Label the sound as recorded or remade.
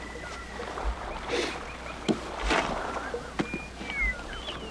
recorded